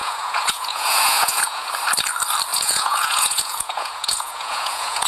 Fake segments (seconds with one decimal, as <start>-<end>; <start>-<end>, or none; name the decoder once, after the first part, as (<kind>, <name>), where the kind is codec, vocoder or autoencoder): 0.0-1.7 (vocoder, Vocos); 2.5-5.1